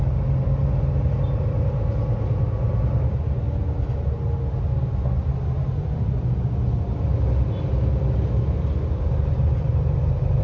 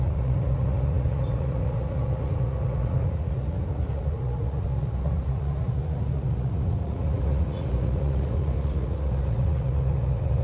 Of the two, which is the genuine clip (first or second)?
first